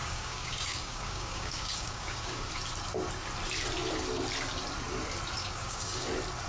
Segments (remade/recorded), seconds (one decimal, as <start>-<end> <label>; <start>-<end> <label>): 0.0-2.5 remade; 2.5-5.4 recorded; 5.4-6.1 remade; 6.1-6.5 recorded